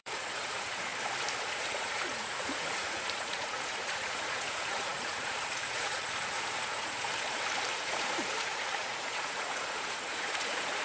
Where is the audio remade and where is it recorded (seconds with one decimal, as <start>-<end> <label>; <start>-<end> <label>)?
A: 0.0-0.9 remade; 0.9-1.4 recorded; 1.4-7.1 remade; 7.1-7.7 recorded; 7.7-10.8 remade